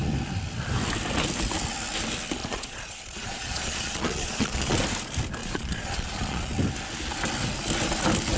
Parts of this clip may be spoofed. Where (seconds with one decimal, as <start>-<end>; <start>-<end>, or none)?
2.4-4.8; 5.4-6.5